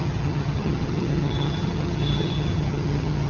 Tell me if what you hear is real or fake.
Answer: fake